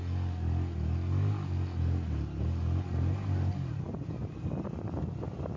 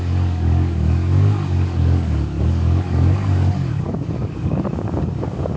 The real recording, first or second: first